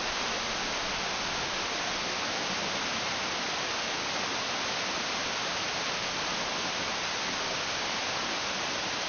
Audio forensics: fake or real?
real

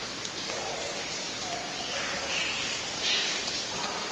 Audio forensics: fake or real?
fake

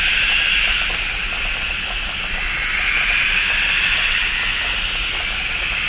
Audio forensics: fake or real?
real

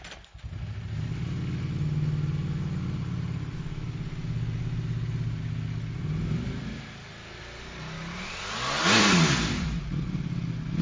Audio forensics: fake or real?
real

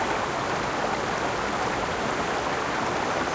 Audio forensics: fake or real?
real